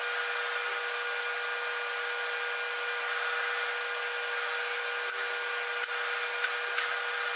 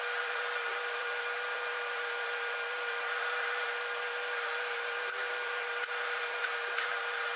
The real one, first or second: first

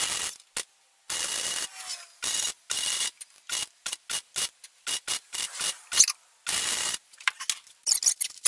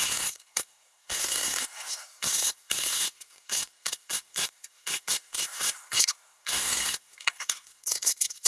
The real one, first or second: first